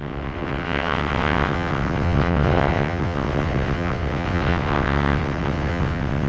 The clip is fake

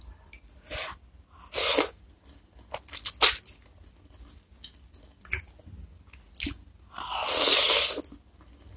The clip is real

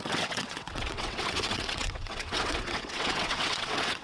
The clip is fake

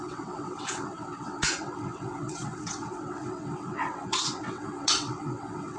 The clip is fake